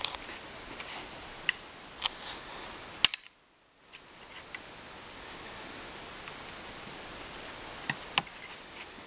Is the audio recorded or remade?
recorded